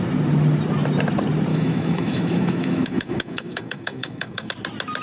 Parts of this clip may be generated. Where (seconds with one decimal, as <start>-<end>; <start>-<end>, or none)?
1.5-4.5

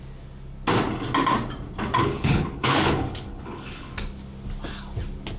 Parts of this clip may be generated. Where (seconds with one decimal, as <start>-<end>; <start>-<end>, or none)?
2.0-3.9

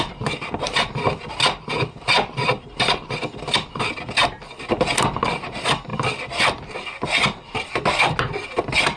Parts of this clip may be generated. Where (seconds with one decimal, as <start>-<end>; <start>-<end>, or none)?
none

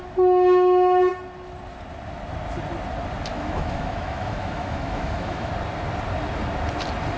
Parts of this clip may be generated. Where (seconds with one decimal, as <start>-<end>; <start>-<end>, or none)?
3.3-5.5

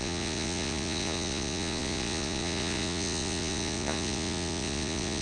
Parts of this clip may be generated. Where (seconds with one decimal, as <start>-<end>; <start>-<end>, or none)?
0.0-5.2

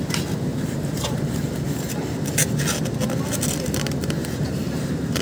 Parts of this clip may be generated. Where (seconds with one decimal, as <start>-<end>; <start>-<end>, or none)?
0.5-1.2; 4.2-5.2

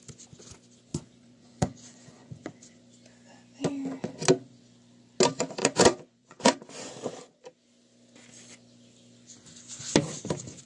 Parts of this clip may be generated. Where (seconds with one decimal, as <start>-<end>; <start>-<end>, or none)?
0.9-2.8; 5.6-6.9

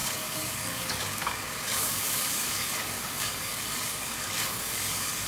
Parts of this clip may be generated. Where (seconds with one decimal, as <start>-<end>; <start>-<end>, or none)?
0.0-5.3